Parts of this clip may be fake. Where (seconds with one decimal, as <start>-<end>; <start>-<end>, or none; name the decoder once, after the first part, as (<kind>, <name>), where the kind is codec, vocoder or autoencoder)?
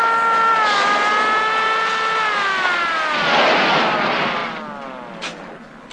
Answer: none